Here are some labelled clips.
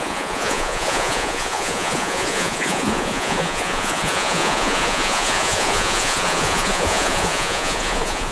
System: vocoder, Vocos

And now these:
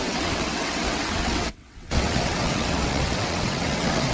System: vocoder, WaveNeXt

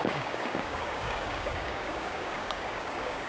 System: codec, DAC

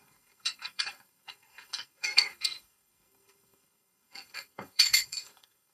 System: codec, SNAC